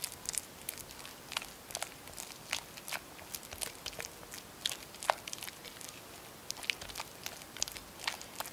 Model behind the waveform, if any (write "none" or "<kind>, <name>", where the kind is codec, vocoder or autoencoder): none